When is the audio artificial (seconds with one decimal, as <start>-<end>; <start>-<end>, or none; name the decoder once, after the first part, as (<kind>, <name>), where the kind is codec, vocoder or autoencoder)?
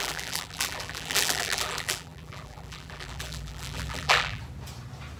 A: 0.0-4.4 (vocoder, BigVGAN v2)